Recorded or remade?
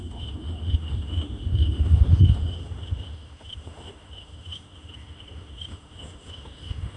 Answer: remade